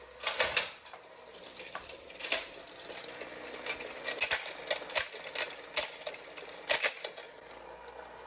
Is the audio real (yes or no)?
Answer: yes